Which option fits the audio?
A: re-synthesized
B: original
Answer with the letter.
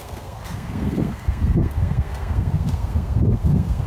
A